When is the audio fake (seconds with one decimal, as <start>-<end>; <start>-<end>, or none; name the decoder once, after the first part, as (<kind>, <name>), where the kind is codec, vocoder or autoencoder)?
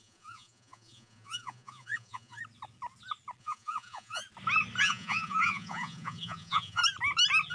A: 0.0-2.4 (vocoder, Vocos); 3.4-4.2; 4.8-6.8